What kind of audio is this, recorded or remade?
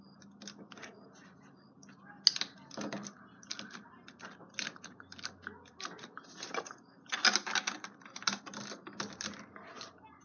recorded